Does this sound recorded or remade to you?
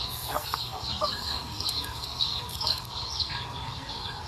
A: remade